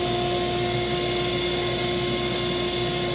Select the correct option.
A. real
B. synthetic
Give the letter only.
A